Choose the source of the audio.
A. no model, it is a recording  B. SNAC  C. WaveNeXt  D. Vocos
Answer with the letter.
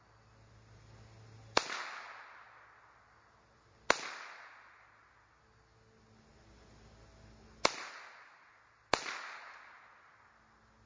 A